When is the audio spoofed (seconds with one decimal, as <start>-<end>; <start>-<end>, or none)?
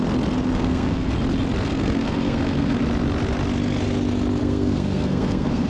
0.5-1.1; 1.7-2.8; 4.4-5.7